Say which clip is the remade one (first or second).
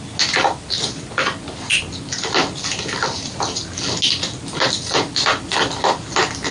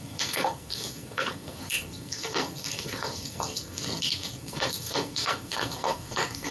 second